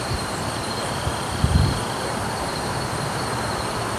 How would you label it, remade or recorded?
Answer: remade